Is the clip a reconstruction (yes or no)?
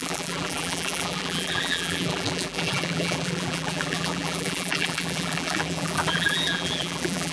yes